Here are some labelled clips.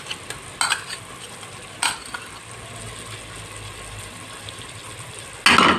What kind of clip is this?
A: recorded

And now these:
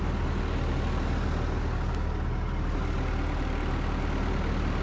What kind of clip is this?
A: recorded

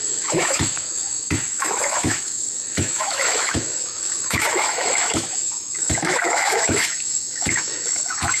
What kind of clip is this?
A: remade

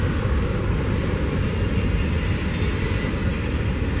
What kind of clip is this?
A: recorded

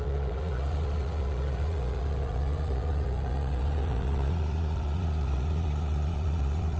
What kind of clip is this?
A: remade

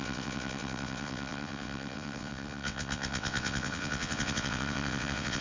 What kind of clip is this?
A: remade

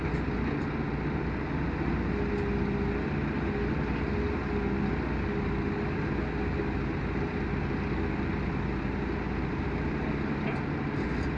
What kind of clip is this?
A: recorded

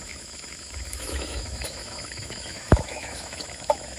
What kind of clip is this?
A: remade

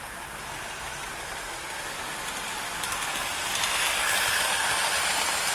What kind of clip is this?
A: recorded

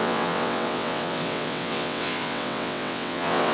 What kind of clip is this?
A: remade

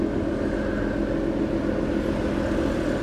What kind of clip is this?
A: recorded